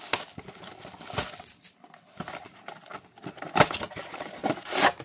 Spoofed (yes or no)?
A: no